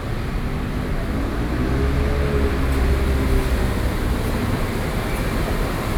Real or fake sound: real